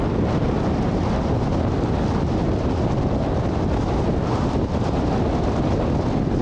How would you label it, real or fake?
real